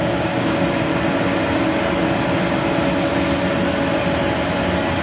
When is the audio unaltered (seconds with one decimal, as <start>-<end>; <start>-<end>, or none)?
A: 0.7-5.0